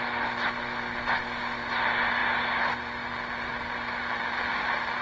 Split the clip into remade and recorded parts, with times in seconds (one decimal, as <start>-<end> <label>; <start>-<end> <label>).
0.0-5.0 recorded